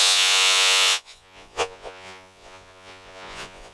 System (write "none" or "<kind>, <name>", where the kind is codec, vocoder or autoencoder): vocoder, Vocos